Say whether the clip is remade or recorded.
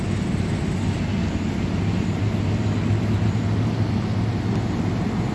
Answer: recorded